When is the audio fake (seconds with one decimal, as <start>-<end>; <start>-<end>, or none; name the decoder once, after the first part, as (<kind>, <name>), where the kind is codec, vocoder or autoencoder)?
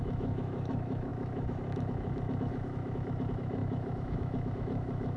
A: 0.0-5.2 (autoencoder, DAC-VAE)